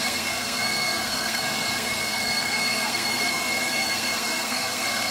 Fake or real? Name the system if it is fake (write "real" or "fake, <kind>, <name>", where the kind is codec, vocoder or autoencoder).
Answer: fake, codec, SNAC